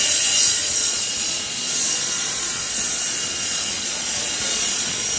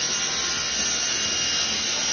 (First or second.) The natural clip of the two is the second